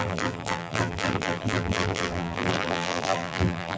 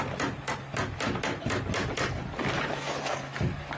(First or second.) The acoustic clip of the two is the second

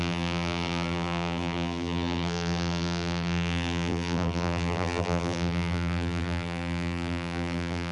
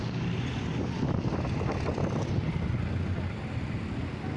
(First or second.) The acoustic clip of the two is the second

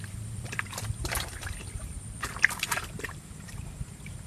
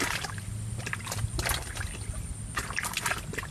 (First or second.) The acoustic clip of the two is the second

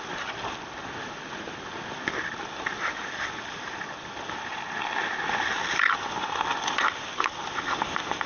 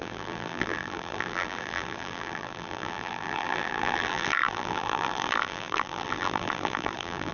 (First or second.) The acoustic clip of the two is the first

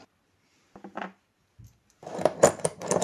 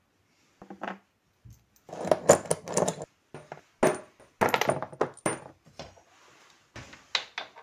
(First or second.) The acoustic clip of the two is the second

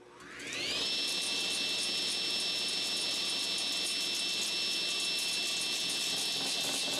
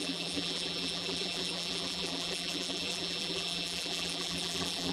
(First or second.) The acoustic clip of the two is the first